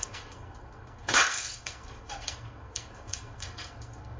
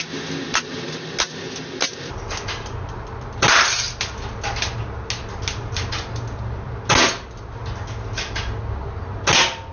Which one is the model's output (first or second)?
first